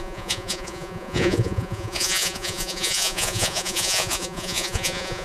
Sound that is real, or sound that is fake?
fake